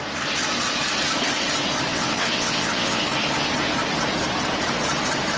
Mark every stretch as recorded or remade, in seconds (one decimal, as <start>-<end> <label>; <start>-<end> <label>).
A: 0.0-1.9 recorded; 1.9-3.0 remade; 3.0-5.4 recorded